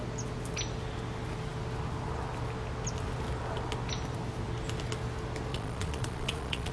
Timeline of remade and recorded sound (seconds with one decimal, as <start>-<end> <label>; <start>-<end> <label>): 0.0-5.5 recorded; 5.5-6.7 remade